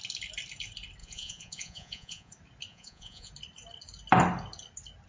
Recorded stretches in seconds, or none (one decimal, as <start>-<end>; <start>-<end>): 0.0-1.0; 2.3-2.7; 3.3-5.1